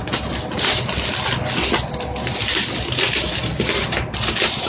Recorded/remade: recorded